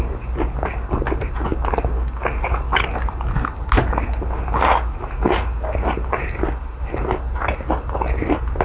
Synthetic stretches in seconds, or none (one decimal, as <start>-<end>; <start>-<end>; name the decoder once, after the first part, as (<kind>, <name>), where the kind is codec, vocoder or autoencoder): none